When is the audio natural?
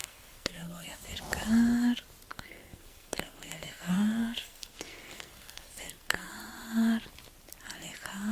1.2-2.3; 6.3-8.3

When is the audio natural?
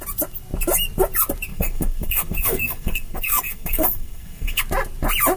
0.0-1.5; 4.6-5.4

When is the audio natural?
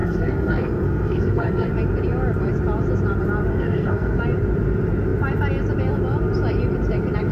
1.7-3.5; 4.2-7.3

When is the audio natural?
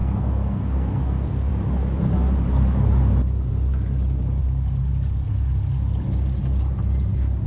1.5-7.5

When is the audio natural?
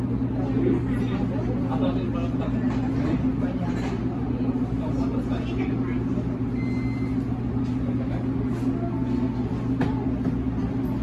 0.0-11.0